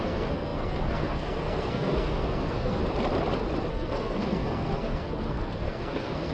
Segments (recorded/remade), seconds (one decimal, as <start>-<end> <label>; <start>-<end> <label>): 0.0-2.8 remade; 2.8-3.7 recorded; 3.7-6.3 remade